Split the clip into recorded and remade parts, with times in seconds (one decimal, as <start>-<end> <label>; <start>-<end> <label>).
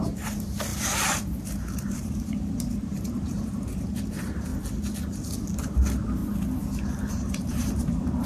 0.0-4.5 remade; 4.5-5.6 recorded; 5.6-6.2 remade; 6.2-7.1 recorded; 7.1-8.3 remade